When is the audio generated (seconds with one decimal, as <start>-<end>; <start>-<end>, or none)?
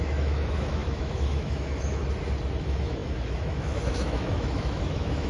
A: 0.0-2.0; 2.6-5.3